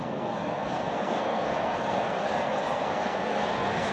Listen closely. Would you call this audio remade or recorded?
remade